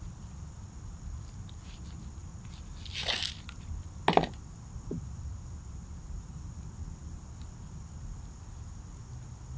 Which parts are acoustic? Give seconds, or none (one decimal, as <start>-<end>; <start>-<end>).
0.0-9.6

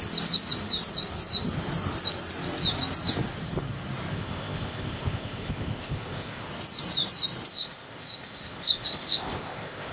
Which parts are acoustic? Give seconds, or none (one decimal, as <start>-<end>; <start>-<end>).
0.0-4.1; 6.5-7.5

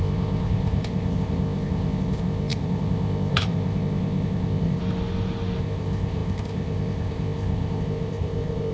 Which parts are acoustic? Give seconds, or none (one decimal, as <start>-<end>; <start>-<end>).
4.8-5.6

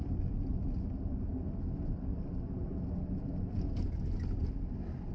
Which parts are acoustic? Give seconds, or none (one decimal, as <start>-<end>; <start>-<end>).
0.0-5.1

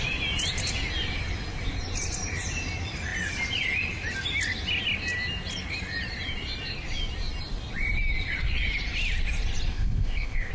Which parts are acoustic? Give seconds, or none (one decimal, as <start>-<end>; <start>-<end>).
0.0-9.7